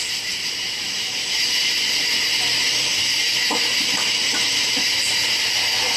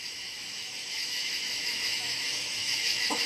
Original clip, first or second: first